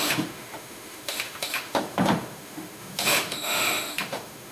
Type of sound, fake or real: fake